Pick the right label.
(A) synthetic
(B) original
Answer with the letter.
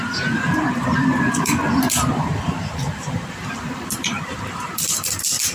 A